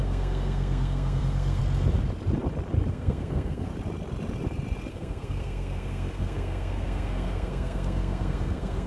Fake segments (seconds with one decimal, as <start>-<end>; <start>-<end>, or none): 0.0-1.6; 2.9-3.7; 4.9-8.9